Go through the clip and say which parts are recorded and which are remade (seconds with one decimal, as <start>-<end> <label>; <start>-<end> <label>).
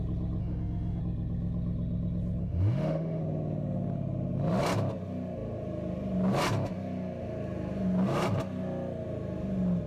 0.0-0.4 recorded; 0.4-1.0 remade; 1.0-2.4 recorded; 2.4-3.2 remade; 3.2-9.9 recorded